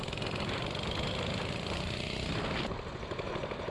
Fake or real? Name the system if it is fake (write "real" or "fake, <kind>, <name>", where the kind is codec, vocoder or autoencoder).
real